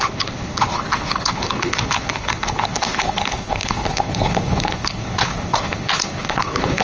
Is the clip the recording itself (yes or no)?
no